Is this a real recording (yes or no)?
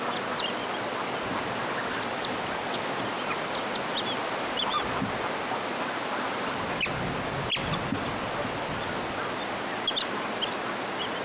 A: yes